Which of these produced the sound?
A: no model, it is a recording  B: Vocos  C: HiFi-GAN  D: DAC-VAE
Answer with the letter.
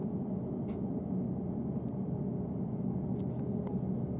A